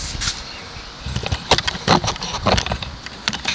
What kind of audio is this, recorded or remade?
recorded